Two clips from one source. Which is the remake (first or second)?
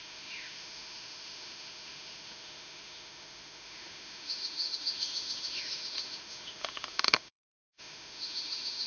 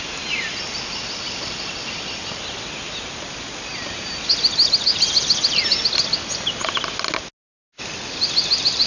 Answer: first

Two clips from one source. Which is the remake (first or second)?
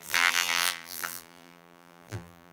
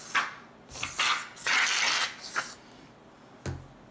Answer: first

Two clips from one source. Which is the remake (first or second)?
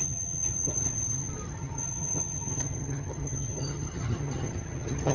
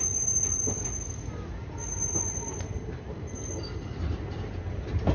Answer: first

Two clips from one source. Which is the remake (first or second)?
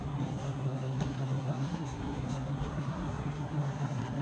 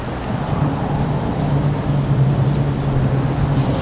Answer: first